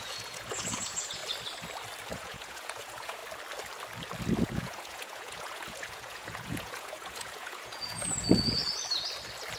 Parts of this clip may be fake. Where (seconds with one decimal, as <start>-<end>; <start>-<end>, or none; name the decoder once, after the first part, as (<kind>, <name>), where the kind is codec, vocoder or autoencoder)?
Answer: 0.0-1.2 (vocoder, Vocos); 2.1-3.2; 4.4-8.6